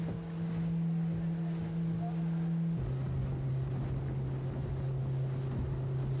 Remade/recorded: recorded